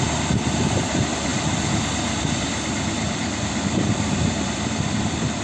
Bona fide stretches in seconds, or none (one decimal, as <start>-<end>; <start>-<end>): none